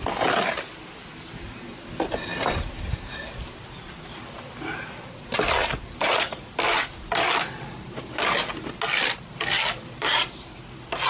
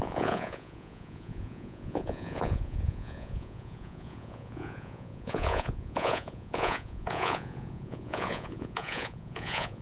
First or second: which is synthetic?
second